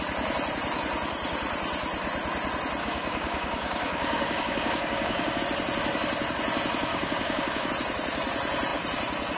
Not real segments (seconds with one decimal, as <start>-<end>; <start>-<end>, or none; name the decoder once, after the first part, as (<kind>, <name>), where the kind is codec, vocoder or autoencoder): 2.8-5.4 (codec, DAC); 6.9-7.7